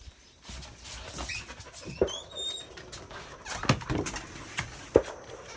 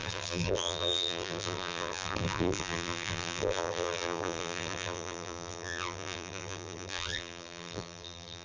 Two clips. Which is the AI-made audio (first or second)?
second